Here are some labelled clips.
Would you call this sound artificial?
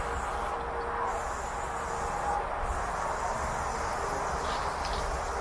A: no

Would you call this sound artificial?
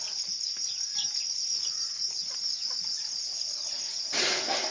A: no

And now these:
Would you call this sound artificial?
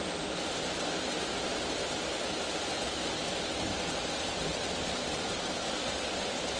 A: no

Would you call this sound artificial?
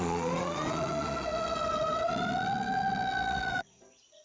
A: yes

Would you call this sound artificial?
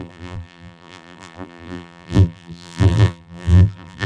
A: yes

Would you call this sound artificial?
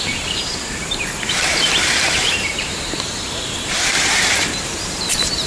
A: yes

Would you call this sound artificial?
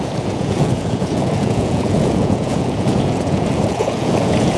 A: yes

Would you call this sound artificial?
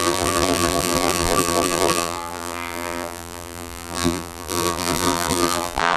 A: yes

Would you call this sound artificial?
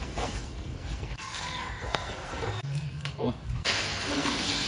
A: yes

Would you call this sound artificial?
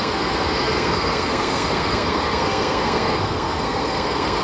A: yes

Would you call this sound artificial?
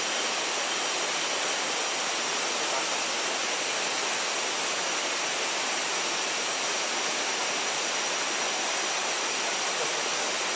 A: no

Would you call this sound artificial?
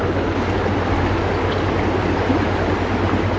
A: no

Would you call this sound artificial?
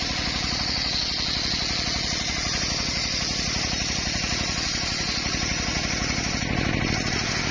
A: no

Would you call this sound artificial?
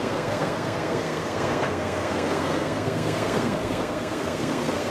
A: yes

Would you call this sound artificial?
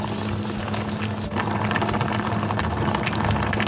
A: no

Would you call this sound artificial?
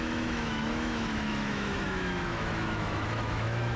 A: yes